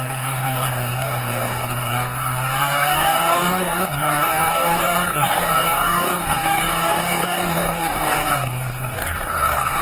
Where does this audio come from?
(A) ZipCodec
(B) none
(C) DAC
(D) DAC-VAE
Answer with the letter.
C